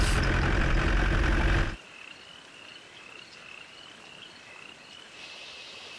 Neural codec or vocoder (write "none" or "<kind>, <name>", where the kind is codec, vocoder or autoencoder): none